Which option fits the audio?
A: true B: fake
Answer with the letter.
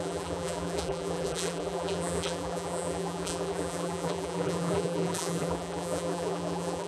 B